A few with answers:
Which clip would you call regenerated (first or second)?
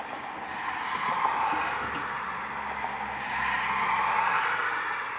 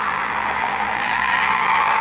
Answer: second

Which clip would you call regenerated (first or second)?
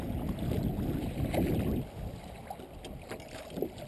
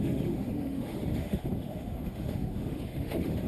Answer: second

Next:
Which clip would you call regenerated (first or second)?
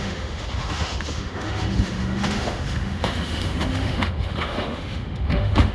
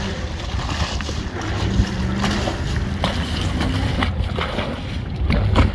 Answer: first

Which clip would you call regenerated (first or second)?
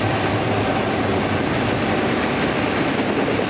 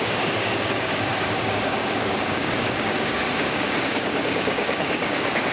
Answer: second